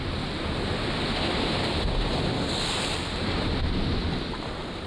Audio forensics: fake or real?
real